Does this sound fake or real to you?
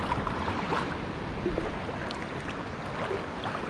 real